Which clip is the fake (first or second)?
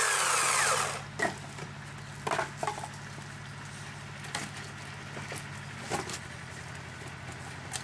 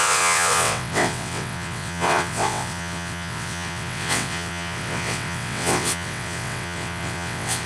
second